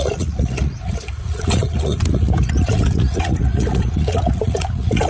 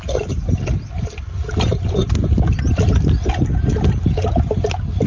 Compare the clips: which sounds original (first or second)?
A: second